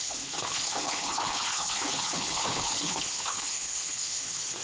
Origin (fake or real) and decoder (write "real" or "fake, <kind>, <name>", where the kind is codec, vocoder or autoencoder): fake, codec, HILCodec